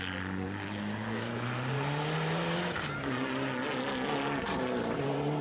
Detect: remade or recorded recorded